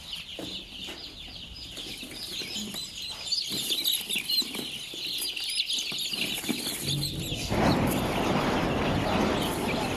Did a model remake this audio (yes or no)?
no